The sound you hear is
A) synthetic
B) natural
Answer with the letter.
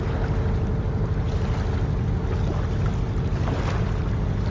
B